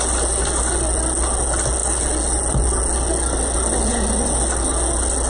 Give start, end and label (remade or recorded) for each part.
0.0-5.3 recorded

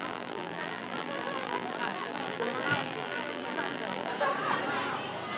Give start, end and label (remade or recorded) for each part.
0.0-4.1 remade; 4.1-5.4 recorded

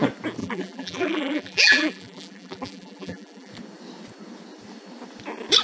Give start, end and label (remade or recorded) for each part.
0.0-0.4 recorded; 0.4-3.5 remade; 3.5-5.6 recorded

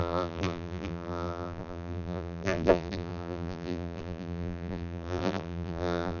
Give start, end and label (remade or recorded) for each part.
0.0-6.2 remade